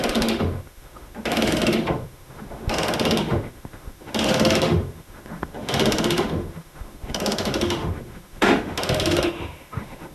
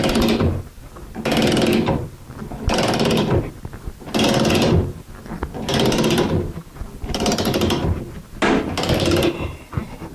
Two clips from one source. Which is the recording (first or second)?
second